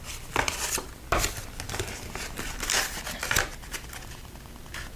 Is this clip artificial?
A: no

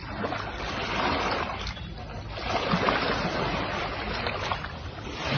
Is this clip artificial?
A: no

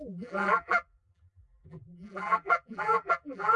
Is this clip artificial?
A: yes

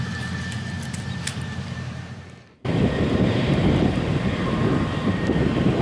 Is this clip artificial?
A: yes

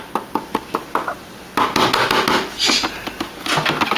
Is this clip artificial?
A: no